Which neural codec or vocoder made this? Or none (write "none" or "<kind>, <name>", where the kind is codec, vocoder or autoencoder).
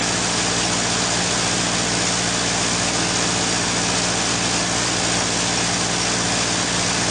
none